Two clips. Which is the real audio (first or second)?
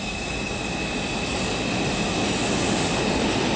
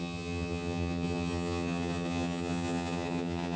first